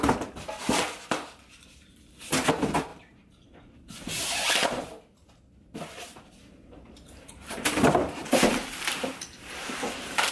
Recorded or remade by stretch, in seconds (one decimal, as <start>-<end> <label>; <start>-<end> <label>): 0.0-2.9 recorded; 2.9-4.8 remade; 4.8-6.1 recorded; 6.1-10.3 remade